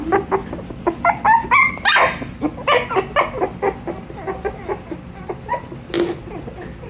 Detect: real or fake real